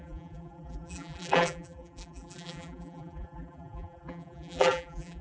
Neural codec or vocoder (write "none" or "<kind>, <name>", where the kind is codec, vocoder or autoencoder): vocoder, BigVGAN v2